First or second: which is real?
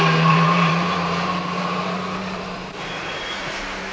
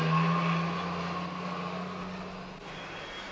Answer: second